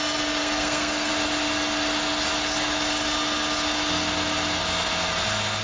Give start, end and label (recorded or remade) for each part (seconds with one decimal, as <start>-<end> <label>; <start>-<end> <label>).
0.0-0.4 recorded; 0.4-1.1 remade; 1.1-5.6 recorded